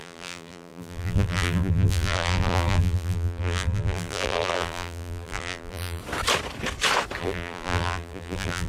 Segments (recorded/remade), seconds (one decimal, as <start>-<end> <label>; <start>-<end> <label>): 0.0-6.0 remade; 6.0-7.2 recorded; 7.2-8.7 remade